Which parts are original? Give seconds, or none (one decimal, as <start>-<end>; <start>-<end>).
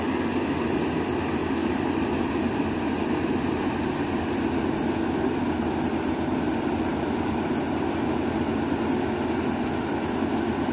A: 0.0-1.6; 4.4-6.9; 7.5-10.7